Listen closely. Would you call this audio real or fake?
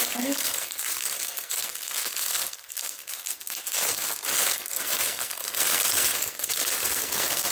fake